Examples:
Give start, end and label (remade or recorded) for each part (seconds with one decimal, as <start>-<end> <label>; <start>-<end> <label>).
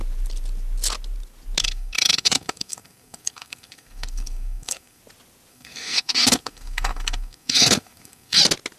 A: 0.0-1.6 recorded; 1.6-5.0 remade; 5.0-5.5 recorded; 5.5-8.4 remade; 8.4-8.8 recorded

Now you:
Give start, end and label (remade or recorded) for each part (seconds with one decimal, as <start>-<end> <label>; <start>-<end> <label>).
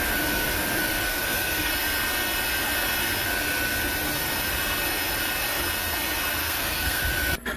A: 0.0-1.1 recorded; 1.1-1.7 remade; 1.7-6.4 recorded; 6.4-7.0 remade; 7.0-7.6 recorded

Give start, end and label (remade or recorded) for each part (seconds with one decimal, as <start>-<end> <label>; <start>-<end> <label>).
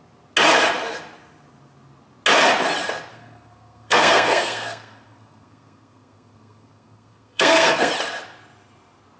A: 0.0-3.1 recorded; 3.1-7.9 remade; 7.9-9.2 recorded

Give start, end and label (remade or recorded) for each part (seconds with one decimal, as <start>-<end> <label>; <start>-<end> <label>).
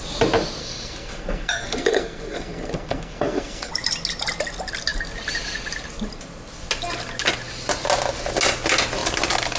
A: 0.0-0.6 recorded; 0.6-3.7 remade; 3.7-9.6 recorded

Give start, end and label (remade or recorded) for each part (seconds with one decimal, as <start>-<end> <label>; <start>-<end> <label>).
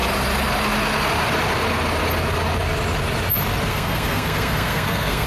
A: 0.0-3.7 recorded; 3.7-5.3 remade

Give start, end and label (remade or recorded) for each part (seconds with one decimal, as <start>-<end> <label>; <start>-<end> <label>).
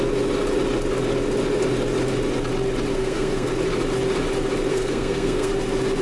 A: 0.0-2.9 recorded; 2.9-3.5 remade; 3.5-4.7 recorded; 4.7-5.5 remade; 5.5-6.0 recorded